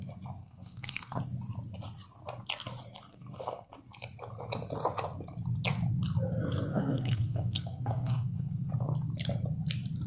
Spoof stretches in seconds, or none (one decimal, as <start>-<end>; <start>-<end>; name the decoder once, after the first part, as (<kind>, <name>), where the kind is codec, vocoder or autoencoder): 0.4-1.2 (codec, SNAC); 3.1-3.7; 6.7-8.7